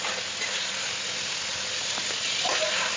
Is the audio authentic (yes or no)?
yes